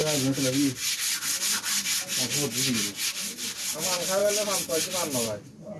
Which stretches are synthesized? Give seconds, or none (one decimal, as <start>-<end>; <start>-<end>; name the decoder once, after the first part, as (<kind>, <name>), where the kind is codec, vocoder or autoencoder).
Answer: none